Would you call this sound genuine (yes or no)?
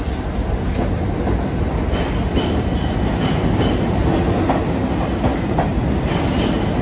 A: yes